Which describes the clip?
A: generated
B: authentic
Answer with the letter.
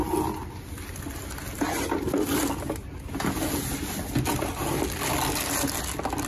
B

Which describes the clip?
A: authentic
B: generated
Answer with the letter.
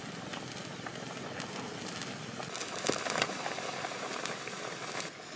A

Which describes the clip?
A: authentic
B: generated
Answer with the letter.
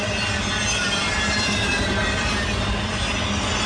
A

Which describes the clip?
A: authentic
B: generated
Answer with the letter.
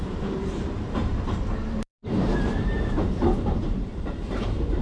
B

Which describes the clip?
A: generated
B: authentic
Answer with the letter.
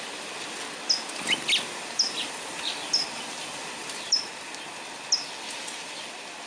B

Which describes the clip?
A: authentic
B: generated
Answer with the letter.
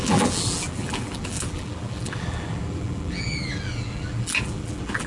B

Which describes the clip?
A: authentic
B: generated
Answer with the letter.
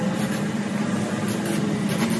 A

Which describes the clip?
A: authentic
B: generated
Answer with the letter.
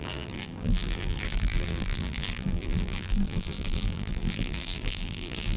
B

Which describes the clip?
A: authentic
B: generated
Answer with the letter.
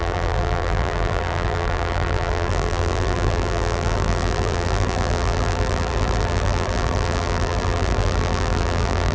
B